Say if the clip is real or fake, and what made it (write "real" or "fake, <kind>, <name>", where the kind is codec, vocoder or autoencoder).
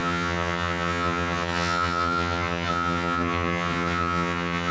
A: fake, vocoder, HiFi-GAN